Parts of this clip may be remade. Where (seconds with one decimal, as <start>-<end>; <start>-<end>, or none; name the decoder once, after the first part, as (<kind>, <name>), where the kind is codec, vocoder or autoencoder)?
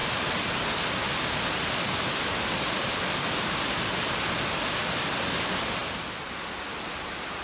none